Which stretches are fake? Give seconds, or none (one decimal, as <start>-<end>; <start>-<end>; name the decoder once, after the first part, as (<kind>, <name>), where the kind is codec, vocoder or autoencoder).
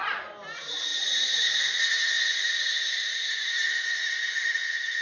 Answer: 0.9-1.6 (vocoder, Vocos)